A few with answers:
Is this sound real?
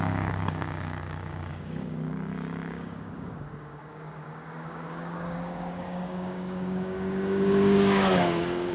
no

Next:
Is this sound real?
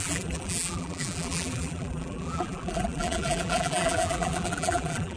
no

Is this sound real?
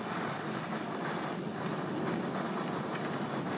yes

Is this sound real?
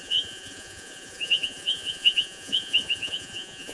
no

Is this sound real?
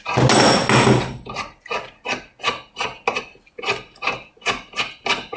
yes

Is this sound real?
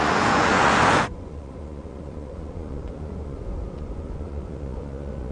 no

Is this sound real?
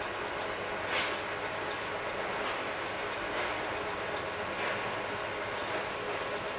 yes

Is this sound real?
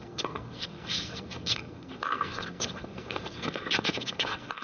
no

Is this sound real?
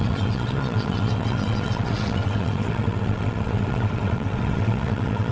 no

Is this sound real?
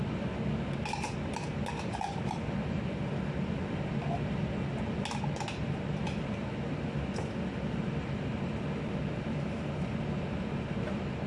yes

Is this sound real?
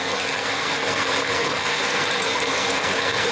no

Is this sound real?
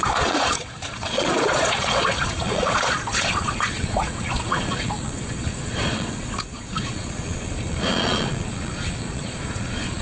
no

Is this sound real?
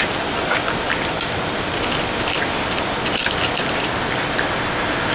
yes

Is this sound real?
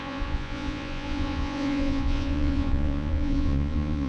no